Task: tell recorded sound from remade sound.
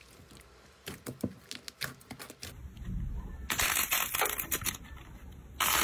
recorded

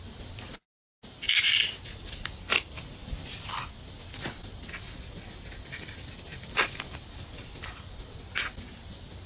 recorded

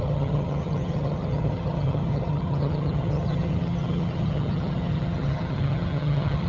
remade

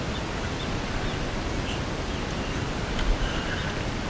recorded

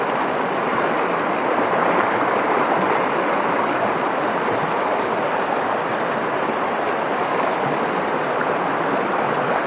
recorded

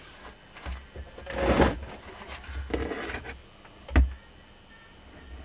recorded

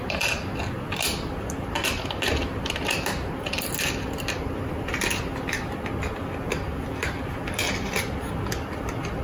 recorded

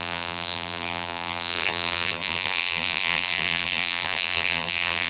remade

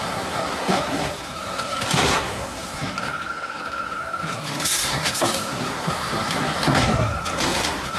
remade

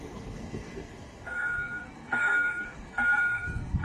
remade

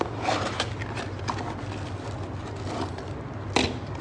recorded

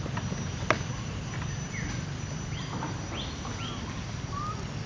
recorded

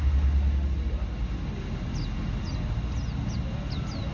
recorded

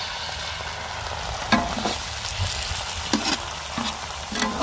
recorded